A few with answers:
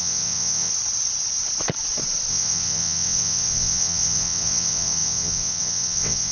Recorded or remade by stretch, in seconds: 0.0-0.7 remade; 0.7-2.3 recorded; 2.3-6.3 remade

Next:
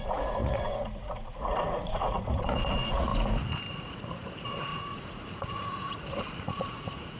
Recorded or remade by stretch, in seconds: 0.0-3.1 remade; 3.1-3.7 recorded; 3.7-7.2 remade

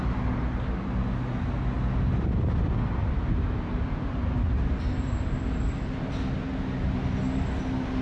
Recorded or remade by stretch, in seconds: 0.0-8.0 recorded